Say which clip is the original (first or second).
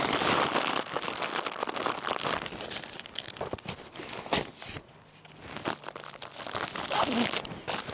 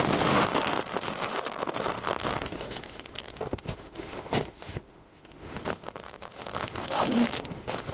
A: first